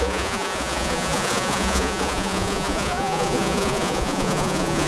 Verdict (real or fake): fake